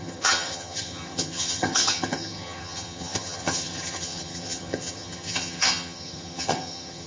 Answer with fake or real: fake